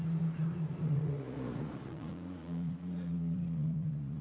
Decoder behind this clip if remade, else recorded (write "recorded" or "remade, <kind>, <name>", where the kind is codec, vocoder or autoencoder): remade, vocoder, Vocos